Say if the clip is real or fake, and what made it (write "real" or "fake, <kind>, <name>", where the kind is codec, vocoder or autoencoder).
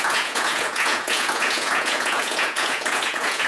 fake, vocoder, Vocos